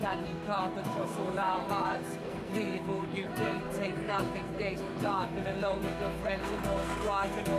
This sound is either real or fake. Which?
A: fake